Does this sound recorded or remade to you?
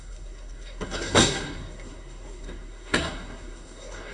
remade